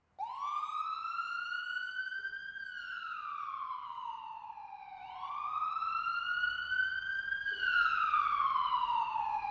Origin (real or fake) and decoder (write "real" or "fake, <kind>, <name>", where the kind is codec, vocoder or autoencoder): real